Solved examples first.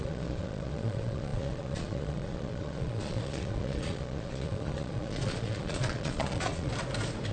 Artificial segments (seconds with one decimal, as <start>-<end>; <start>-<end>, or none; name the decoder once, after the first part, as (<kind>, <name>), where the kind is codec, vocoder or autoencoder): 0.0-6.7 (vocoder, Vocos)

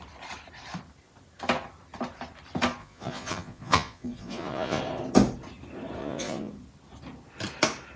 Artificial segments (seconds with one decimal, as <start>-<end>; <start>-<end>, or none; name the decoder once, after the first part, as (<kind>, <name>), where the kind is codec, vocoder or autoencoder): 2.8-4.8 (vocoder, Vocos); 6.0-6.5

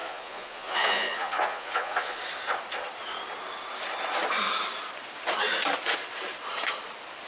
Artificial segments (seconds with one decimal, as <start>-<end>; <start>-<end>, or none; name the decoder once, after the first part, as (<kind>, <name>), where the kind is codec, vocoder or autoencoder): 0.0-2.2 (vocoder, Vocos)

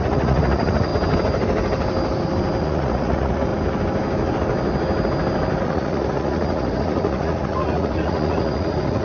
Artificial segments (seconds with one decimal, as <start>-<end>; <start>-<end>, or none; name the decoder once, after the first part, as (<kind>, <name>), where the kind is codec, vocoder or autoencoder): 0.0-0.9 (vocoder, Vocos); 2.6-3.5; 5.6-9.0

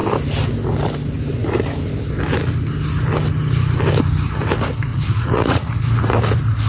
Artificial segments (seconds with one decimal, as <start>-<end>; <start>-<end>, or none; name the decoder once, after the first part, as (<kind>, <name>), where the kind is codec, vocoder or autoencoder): 4.9-5.8 (vocoder, Vocos)